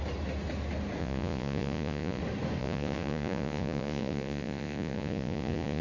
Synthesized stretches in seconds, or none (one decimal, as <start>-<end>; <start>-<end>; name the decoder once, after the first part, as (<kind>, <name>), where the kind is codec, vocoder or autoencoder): 1.0-2.2 (vocoder, Vocos); 2.6-5.8